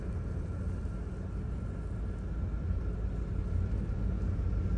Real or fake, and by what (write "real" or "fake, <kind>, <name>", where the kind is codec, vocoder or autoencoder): real